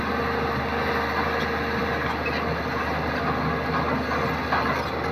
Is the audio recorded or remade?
recorded